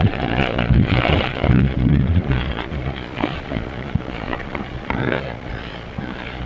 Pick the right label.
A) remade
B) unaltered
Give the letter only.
A